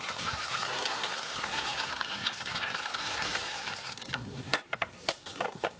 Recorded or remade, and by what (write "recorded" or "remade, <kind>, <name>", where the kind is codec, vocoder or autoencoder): remade, codec, SNAC